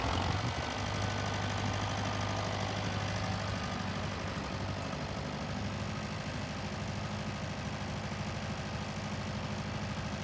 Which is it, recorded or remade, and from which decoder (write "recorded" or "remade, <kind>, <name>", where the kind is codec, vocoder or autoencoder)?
recorded